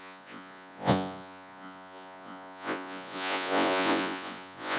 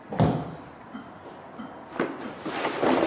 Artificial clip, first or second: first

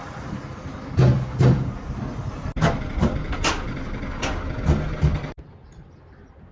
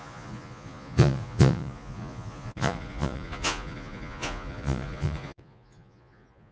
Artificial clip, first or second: second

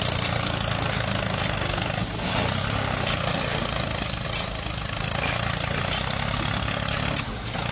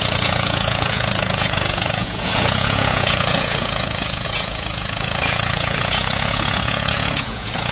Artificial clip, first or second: second